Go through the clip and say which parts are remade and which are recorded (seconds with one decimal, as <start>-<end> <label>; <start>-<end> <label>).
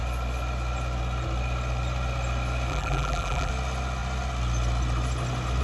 0.0-2.7 recorded; 2.7-3.5 remade; 3.5-5.6 recorded